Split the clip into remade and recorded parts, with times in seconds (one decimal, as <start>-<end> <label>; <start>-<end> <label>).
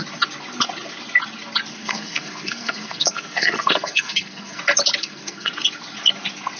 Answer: 0.0-1.7 recorded; 1.7-4.6 remade; 4.6-5.0 recorded; 5.0-5.5 remade; 5.5-6.6 recorded